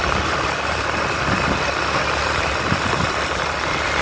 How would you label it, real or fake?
real